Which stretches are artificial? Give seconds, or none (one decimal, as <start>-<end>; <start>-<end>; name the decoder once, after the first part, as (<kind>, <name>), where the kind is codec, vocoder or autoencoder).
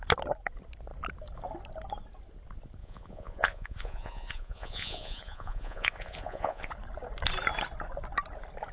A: 2.8-6.7 (vocoder, Vocos)